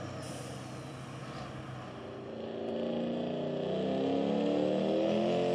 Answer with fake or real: real